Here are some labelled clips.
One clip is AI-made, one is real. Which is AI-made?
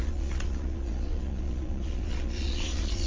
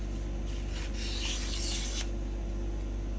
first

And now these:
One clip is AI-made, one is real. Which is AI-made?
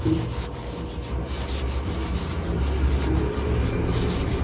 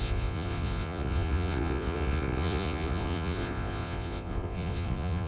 second